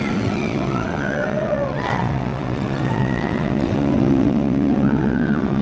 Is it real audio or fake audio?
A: fake